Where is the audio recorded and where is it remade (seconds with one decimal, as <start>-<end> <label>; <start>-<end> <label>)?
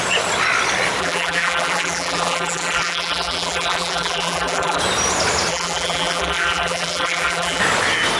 0.0-1.0 recorded; 1.0-4.8 remade; 4.8-5.5 recorded; 5.5-7.6 remade; 7.6-8.2 recorded